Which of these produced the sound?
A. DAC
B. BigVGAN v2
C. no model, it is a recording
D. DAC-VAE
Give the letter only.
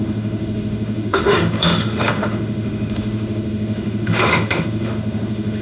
D